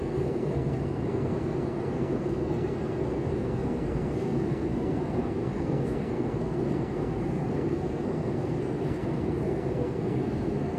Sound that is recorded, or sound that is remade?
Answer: remade